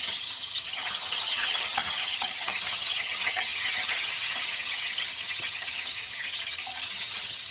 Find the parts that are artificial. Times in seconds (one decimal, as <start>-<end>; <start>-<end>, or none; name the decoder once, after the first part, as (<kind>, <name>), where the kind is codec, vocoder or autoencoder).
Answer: 0.0-7.5 (vocoder, HiFi-GAN)